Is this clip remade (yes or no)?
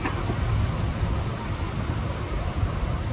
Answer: no